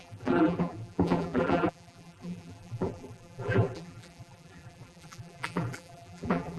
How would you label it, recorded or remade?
remade